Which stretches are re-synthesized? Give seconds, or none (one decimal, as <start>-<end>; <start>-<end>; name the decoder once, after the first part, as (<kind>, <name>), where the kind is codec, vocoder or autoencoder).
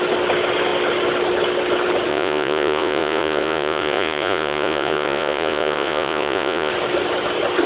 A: 2.1-6.7 (vocoder, Vocos)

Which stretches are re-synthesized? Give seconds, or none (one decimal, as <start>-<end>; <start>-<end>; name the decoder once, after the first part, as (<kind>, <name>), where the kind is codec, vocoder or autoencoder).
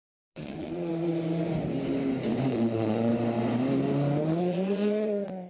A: 0.0-0.9 (vocoder, Vocos); 2.5-3.1; 4.4-5.5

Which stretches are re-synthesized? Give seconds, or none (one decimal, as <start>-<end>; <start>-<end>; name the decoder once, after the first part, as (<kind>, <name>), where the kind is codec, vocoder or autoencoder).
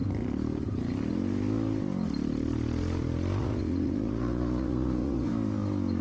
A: 3.4-5.3 (vocoder, Vocos)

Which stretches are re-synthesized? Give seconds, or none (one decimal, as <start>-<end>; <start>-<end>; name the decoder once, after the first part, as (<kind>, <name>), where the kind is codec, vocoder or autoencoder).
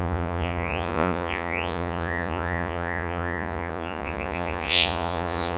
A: 0.0-5.6 (vocoder, Vocos)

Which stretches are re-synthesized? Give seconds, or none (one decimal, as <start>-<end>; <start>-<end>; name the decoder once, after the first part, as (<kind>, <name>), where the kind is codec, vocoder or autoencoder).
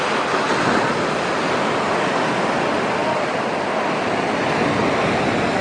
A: none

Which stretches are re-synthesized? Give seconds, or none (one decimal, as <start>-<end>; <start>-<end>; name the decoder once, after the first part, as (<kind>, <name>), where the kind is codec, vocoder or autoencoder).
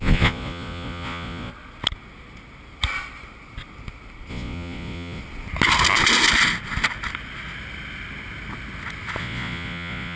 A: 0.0-1.5 (vocoder, Vocos); 4.3-5.2; 9.2-10.2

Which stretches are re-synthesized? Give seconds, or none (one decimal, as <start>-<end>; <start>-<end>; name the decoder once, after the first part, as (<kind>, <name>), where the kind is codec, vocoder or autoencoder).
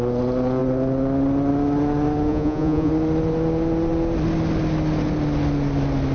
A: 2.3-2.9 (vocoder, Vocos)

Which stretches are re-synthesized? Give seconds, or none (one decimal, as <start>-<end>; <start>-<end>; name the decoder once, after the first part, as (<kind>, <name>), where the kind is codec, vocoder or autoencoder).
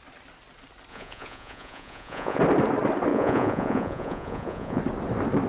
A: 0.9-2.4 (vocoder, Vocos); 3.1-4.8